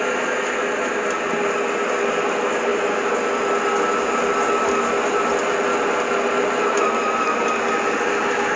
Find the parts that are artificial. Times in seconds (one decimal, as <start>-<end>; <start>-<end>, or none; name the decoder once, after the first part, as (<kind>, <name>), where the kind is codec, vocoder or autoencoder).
none